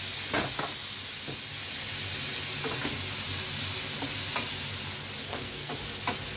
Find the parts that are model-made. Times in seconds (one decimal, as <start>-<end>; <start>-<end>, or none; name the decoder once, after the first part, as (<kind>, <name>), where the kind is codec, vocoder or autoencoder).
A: 5.2-5.7 (codec, SNAC)